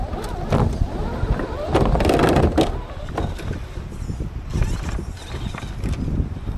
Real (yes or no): yes